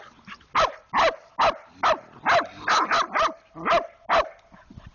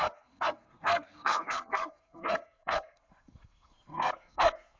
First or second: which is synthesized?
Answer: second